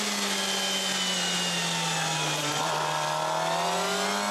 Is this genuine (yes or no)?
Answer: yes